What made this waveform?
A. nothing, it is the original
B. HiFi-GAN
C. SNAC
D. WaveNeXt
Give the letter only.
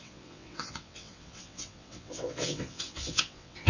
D